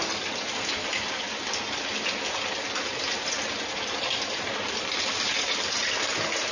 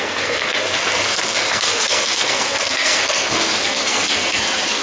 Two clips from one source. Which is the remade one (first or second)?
second